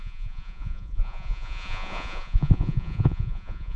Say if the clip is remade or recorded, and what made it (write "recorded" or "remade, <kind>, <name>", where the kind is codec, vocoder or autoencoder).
remade, vocoder, Vocos